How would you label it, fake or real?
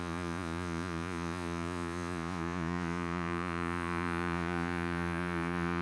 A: fake